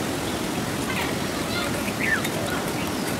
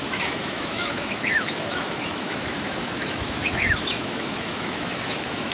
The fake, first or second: second